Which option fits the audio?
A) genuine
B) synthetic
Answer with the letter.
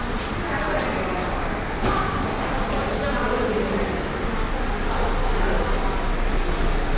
A